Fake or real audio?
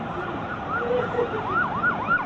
fake